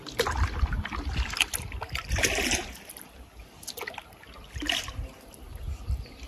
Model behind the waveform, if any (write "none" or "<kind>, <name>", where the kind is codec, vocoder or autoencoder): none